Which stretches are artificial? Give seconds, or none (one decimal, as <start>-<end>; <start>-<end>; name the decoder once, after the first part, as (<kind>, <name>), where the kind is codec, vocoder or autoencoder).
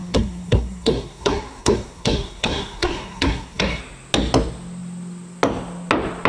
0.0-3.8 (codec, SNAC)